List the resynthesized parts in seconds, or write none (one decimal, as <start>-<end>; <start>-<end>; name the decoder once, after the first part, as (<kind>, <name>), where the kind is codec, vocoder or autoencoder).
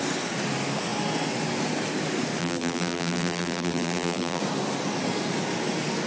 2.4-4.4 (vocoder, BigVGAN v2)